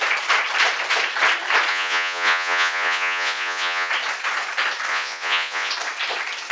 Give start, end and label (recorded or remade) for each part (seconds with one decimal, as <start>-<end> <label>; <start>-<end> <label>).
0.0-1.7 recorded; 1.7-3.9 remade; 3.9-4.9 recorded; 4.9-5.7 remade; 5.7-6.5 recorded